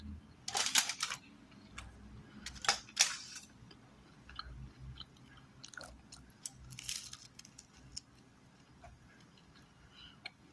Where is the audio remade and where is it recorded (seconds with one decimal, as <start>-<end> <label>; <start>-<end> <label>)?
0.0-10.5 recorded